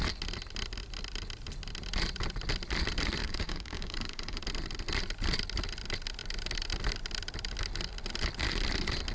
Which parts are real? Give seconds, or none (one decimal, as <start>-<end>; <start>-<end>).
0.0-3.2; 4.4-9.1